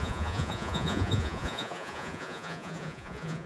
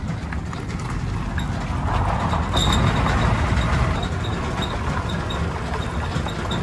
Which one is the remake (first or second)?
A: first